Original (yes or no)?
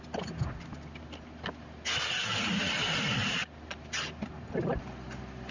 yes